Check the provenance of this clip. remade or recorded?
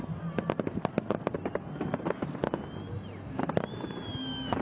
recorded